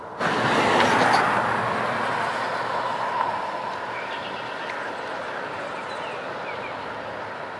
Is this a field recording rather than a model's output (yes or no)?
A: yes